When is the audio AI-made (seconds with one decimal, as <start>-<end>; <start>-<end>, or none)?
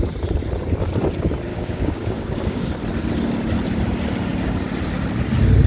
1.5-2.7